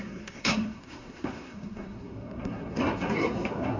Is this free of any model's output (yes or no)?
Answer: no